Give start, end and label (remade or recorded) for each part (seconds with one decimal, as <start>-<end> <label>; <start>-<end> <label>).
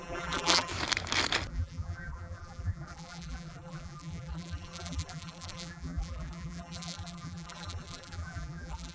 0.0-0.7 remade; 0.7-1.5 recorded; 1.5-8.9 remade